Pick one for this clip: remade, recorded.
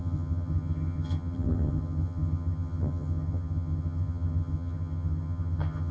remade